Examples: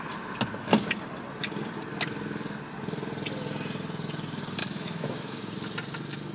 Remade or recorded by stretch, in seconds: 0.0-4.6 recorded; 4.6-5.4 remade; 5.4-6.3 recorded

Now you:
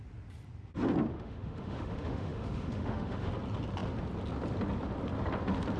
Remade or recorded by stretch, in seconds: 0.0-1.1 recorded; 1.1-3.3 remade; 3.3-5.8 recorded

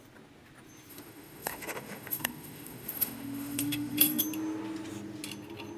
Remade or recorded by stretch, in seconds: 0.0-0.9 recorded; 0.9-4.2 remade; 4.2-5.8 recorded

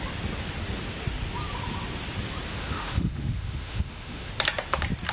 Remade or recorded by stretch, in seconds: 0.0-2.5 recorded; 2.5-4.3 remade; 4.3-5.1 recorded

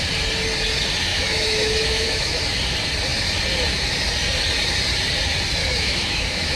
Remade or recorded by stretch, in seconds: 0.0-1.1 recorded; 1.1-2.4 remade; 2.4-5.6 recorded; 5.6-6.6 remade

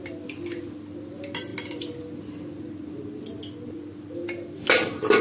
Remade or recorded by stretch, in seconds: 0.0-5.2 recorded

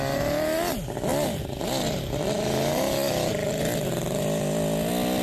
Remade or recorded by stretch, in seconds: 0.0-5.2 recorded

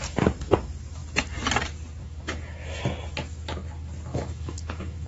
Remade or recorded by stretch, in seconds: 0.0-2.0 recorded; 2.0-2.8 remade; 2.8-4.1 recorded; 4.1-5.1 remade